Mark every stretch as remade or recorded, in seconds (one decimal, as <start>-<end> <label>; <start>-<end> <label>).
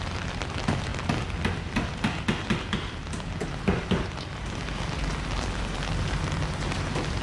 0.0-7.2 recorded